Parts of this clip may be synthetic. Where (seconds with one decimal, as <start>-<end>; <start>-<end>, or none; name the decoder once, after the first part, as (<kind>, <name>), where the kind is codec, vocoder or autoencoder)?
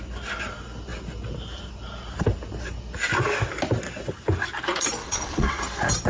5.0-5.6 (vocoder, WaveNeXt)